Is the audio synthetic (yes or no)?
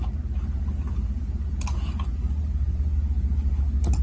no